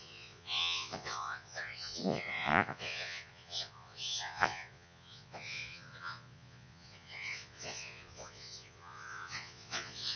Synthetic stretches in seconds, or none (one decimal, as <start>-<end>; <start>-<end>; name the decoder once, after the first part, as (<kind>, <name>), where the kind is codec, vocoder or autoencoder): 0.0-10.2 (vocoder, Vocos)